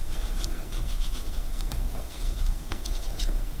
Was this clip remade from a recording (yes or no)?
yes